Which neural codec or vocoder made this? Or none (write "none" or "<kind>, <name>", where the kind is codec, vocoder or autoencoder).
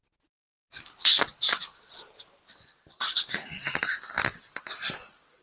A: none